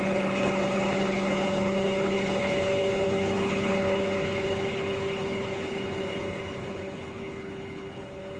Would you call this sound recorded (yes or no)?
no